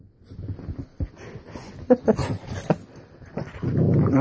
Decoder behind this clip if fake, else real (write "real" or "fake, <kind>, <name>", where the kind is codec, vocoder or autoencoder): real